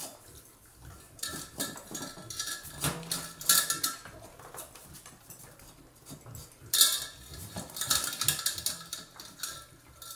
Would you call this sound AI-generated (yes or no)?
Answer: no